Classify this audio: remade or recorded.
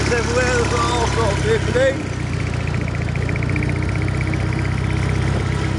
recorded